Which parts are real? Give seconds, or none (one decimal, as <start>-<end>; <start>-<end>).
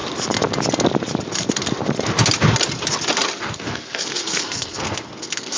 0.0-3.4